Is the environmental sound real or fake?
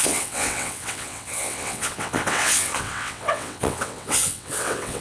fake